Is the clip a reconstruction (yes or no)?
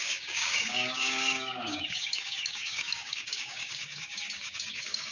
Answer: yes